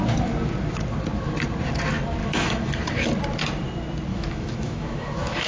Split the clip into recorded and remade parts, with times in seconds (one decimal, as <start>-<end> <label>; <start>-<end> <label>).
0.0-2.2 recorded; 2.2-2.7 remade; 2.7-4.1 recorded; 4.1-5.5 remade